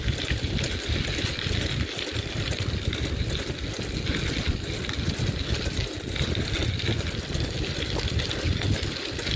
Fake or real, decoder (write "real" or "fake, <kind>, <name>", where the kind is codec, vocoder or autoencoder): real